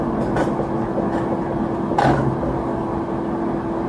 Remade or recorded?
recorded